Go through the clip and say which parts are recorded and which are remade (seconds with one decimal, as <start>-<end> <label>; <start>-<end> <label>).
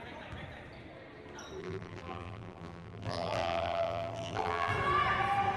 0.0-1.6 recorded; 1.6-4.7 remade; 4.7-5.6 recorded